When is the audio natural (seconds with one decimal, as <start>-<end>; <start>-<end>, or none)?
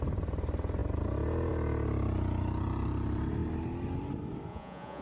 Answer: 0.0-4.5